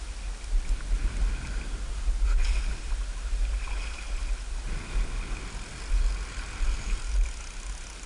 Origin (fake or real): real